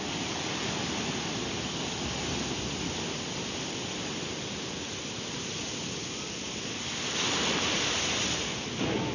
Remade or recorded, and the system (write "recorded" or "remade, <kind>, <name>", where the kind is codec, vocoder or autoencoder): recorded